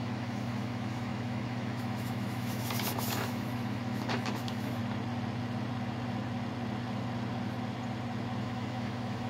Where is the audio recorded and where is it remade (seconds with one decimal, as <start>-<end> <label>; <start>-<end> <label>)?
0.0-4.8 remade; 4.8-8.4 recorded; 8.4-9.3 remade